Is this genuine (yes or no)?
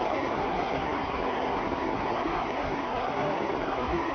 no